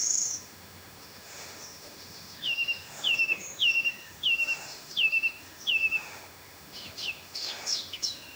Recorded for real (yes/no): no